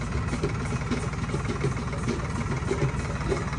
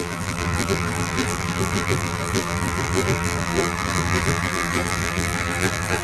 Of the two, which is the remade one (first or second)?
second